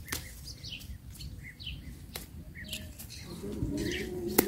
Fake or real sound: real